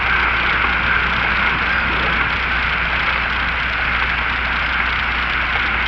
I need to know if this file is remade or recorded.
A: recorded